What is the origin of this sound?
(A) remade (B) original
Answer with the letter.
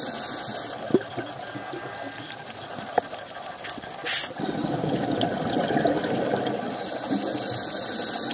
B